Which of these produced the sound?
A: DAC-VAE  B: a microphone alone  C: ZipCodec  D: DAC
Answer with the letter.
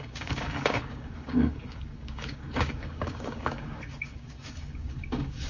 D